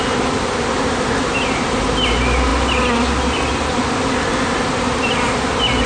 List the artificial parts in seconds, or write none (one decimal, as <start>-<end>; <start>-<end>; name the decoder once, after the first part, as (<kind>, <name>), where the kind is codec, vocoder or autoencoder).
none